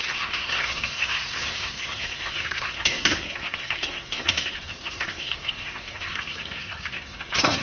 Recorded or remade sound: remade